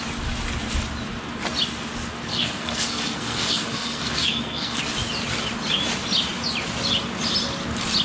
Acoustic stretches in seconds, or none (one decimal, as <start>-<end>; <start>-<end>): 0.0-2.3; 4.8-8.0